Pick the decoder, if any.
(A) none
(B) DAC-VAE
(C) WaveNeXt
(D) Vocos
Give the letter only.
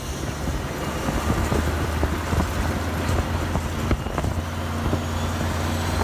A